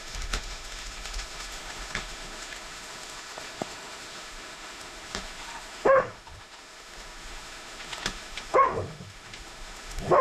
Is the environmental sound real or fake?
fake